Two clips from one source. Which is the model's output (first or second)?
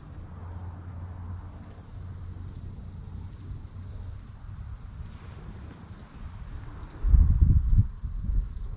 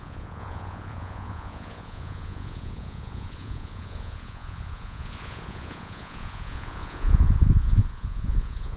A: second